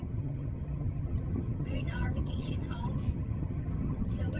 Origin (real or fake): fake